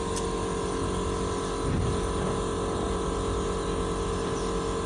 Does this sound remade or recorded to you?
recorded